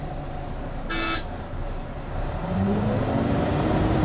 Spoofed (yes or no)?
yes